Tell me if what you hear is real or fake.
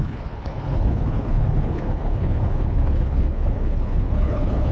fake